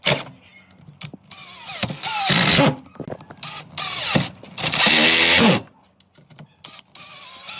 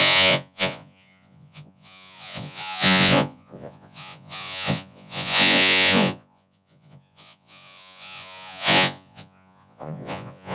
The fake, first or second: second